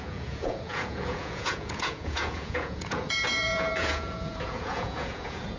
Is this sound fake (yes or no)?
yes